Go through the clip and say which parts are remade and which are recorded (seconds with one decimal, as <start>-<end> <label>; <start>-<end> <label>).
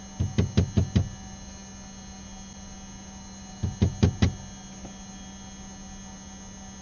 0.0-6.8 recorded